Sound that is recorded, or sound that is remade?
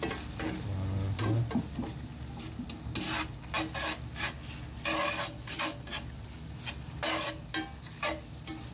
recorded